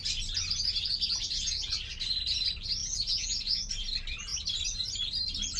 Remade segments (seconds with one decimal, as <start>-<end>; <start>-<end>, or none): 2.8-3.8